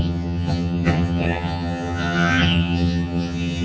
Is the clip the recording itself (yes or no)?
no